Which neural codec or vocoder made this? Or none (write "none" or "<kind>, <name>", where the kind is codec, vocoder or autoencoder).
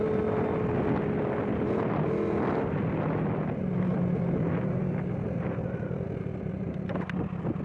none